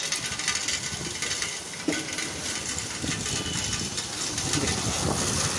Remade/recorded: recorded